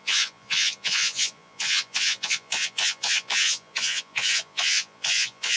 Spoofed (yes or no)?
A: yes